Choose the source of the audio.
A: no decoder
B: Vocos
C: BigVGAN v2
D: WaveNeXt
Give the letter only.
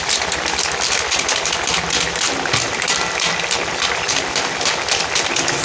A